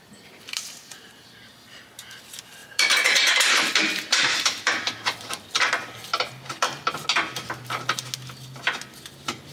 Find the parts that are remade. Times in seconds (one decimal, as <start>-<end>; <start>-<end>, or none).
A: 2.6-5.3